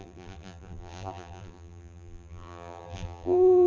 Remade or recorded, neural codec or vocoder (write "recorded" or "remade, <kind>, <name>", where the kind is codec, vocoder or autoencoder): remade, vocoder, BigVGAN v2